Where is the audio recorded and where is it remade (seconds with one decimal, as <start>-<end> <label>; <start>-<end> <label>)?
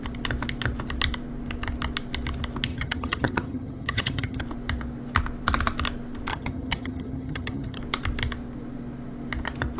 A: 0.0-2.7 recorded; 2.7-4.4 remade; 4.4-6.3 recorded; 6.3-7.8 remade; 7.8-9.8 recorded